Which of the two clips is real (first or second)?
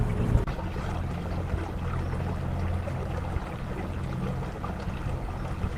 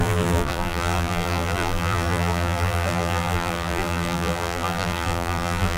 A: first